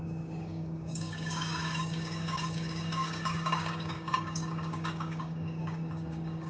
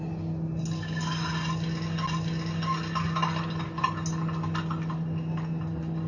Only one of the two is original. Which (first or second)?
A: second